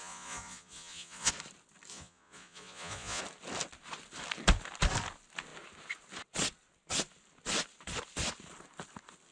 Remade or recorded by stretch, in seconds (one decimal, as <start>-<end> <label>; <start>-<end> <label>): 0.0-1.3 remade; 1.3-1.9 recorded; 1.9-3.2 remade; 3.2-9.3 recorded